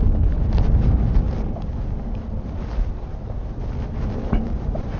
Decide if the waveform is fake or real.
real